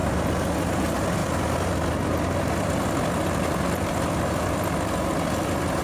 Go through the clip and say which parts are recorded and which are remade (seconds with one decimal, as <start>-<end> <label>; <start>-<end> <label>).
0.0-5.8 recorded